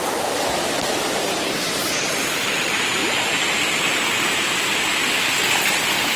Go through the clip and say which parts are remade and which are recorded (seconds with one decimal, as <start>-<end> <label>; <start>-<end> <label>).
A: 0.0-3.0 remade; 3.0-5.2 recorded; 5.2-6.2 remade

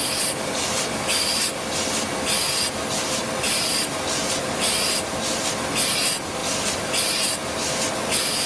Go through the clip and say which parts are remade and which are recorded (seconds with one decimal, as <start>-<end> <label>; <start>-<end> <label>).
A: 0.0-6.4 recorded; 6.4-6.9 remade; 6.9-8.5 recorded

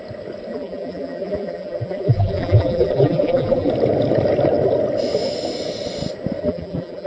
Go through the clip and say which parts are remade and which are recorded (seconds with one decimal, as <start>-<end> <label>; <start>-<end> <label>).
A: 0.0-0.5 recorded; 0.5-3.7 remade; 3.7-6.4 recorded; 6.4-7.1 remade

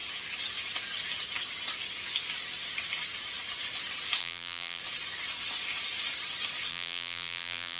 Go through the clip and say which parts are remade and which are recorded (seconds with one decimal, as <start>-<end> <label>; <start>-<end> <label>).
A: 0.0-4.2 recorded; 4.2-4.8 remade; 4.8-6.7 recorded; 6.7-7.8 remade

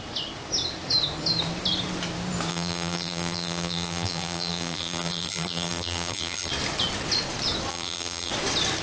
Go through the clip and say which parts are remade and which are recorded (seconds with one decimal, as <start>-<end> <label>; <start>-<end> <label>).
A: 0.0-2.5 recorded; 2.5-6.5 remade; 6.5-7.7 recorded; 7.7-8.3 remade; 8.3-8.8 recorded